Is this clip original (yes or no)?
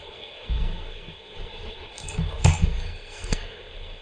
no